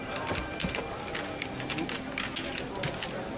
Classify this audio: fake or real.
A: real